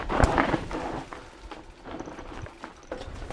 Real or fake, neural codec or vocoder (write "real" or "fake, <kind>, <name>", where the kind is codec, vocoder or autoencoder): real